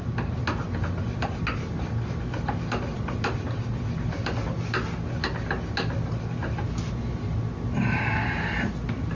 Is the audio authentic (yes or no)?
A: yes